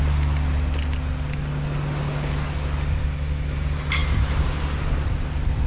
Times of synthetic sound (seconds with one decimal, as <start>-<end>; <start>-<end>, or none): none